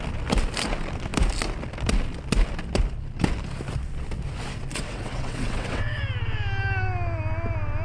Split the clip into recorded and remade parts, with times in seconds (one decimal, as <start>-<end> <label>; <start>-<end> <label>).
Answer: 0.0-4.7 recorded; 4.7-6.0 remade; 6.0-7.8 recorded